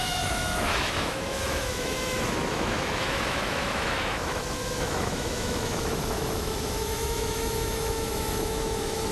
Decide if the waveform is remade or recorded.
remade